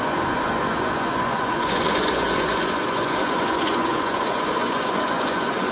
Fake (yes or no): yes